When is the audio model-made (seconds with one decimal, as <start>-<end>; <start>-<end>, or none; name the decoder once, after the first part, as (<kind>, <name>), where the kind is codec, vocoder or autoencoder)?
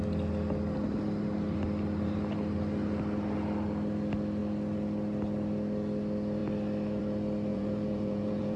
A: 7.5-8.6 (vocoder, Vocos)